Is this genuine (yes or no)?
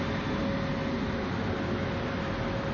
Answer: yes